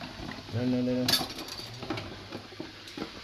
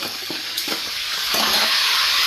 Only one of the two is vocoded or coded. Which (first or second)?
second